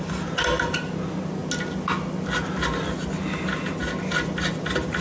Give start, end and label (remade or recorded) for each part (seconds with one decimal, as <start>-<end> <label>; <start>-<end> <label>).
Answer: 0.0-5.0 recorded